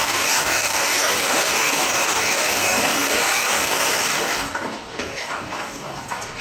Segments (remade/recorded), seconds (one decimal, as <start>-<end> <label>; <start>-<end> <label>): 0.0-6.4 remade